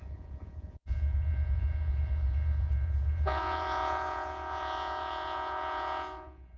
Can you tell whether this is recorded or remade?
remade